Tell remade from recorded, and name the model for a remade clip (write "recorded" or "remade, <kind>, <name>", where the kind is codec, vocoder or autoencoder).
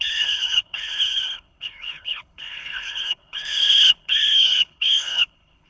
remade, codec, HILCodec